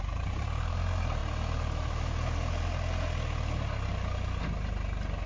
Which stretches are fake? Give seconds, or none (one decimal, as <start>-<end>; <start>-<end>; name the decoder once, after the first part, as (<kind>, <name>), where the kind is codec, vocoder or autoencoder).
none